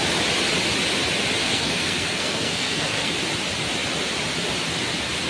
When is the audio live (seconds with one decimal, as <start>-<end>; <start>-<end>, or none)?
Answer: 0.0-1.4; 3.1-5.3

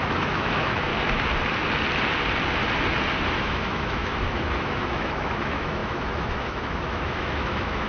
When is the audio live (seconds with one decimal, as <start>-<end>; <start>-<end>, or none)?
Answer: 0.9-3.4

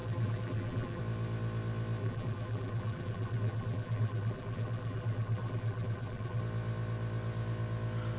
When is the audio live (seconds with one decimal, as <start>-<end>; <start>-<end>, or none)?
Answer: 1.0-2.0; 6.4-8.2

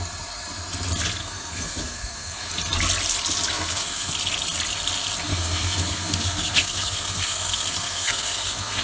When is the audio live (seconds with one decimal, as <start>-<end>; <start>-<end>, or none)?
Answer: 0.0-1.2; 2.5-3.5; 4.1-5.3

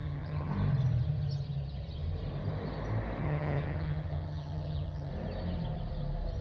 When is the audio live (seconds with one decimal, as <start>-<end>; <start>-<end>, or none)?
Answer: 0.5-3.2; 5.1-6.4